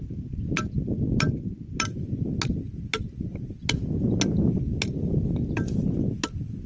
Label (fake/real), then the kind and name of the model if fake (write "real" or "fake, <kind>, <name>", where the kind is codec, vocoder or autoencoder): real